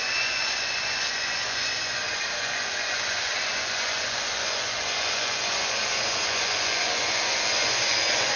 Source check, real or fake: fake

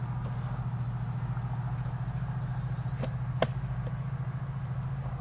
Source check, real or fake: real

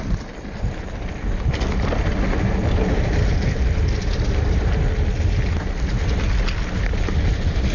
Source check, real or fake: real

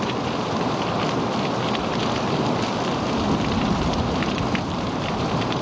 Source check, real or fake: fake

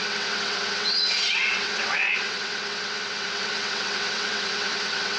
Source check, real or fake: fake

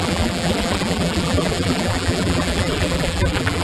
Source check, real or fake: fake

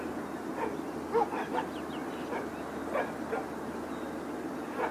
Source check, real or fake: real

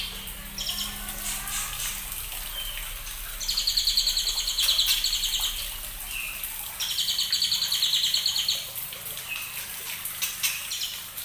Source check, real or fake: real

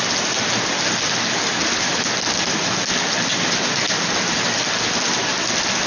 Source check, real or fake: real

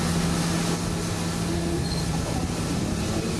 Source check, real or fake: real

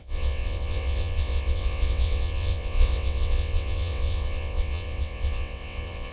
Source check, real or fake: fake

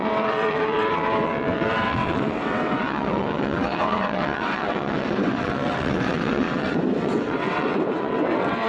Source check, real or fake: fake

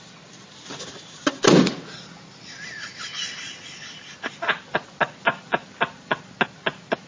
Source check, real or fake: real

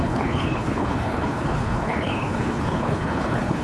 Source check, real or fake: fake